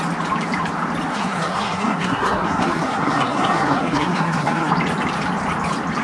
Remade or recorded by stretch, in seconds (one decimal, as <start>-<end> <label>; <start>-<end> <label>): 0.0-1.1 recorded; 1.1-4.7 remade; 4.7-6.0 recorded